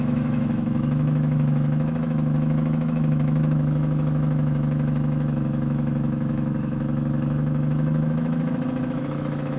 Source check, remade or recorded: remade